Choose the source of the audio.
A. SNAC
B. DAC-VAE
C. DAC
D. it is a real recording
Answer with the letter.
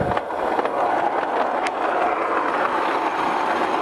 D